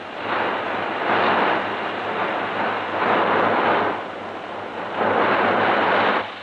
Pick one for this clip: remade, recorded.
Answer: remade